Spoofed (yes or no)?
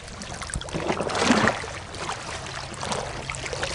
no